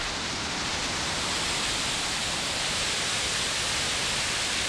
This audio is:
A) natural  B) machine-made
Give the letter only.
A